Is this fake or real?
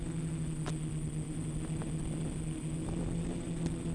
real